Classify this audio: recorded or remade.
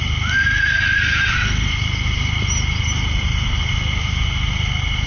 recorded